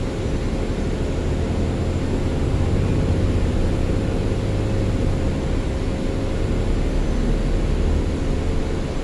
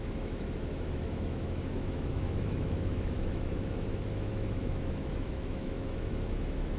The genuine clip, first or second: first